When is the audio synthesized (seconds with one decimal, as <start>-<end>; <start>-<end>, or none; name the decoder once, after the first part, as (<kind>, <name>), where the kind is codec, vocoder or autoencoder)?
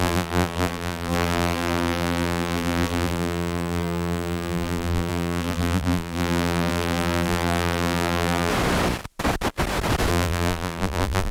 0.0-8.5 (vocoder, BigVGAN v2); 10.1-11.3